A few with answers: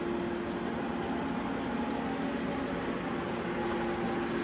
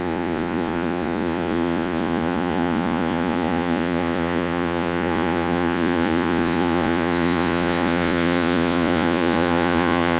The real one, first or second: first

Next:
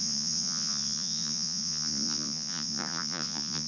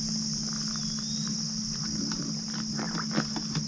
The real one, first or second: second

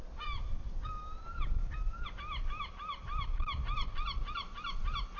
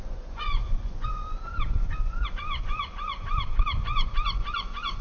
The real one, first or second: first